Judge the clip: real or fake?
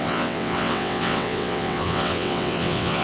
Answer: fake